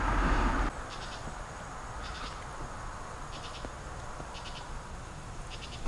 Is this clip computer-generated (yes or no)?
no